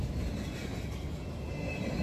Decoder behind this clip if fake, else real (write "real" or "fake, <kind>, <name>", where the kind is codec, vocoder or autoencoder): real